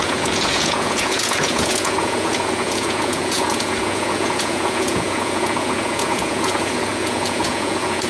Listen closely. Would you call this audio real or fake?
fake